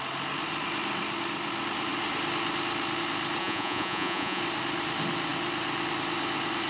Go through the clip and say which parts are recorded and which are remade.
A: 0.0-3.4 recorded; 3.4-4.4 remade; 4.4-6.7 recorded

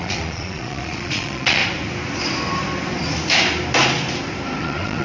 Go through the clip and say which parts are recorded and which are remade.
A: 0.0-1.6 remade; 1.6-4.6 recorded; 4.6-5.0 remade

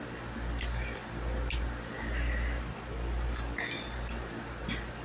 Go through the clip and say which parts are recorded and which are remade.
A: 0.0-5.0 recorded